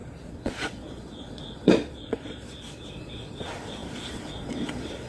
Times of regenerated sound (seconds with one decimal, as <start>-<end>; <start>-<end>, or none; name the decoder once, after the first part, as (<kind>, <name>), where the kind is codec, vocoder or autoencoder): 0.0-5.1 (vocoder, Vocos)